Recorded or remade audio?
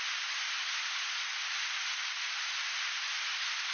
recorded